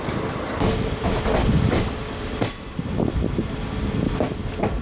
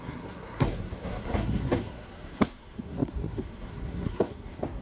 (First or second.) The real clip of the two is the first